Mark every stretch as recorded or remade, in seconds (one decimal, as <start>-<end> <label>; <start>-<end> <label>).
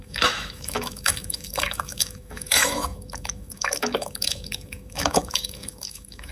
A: 0.0-6.3 remade